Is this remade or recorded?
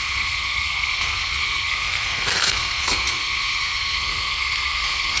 remade